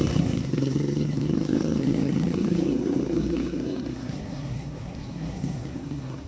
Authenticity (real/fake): fake